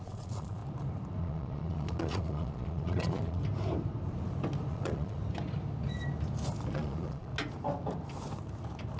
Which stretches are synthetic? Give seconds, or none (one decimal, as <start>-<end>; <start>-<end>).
0.0-0.6; 1.2-3.4; 4.7-5.2; 6.7-7.3